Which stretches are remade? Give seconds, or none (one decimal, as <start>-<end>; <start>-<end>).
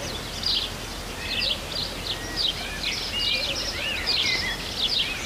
none